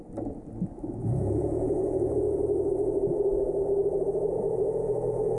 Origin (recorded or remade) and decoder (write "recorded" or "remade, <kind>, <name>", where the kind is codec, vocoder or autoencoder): recorded